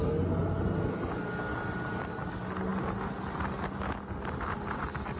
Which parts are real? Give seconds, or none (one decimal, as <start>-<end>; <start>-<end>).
0.0-5.2